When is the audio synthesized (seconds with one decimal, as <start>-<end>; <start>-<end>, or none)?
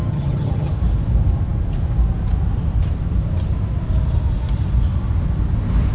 0.0-0.7